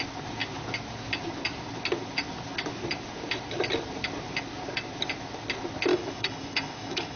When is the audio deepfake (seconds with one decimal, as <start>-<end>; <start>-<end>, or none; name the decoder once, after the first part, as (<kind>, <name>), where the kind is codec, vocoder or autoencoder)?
5.9-7.2 (autoencoder, DAC-VAE)

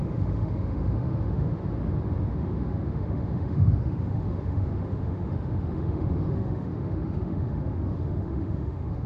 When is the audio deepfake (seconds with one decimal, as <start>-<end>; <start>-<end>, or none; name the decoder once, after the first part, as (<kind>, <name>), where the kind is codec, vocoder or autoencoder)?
0.0-1.6 (autoencoder, DAC-VAE); 2.3-9.1